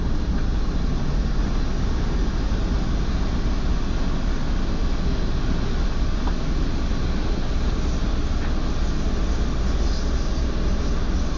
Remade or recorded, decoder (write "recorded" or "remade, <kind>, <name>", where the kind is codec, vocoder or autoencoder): recorded